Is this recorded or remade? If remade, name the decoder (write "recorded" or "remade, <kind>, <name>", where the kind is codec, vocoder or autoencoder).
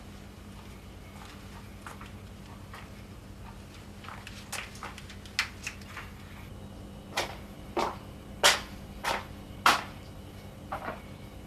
recorded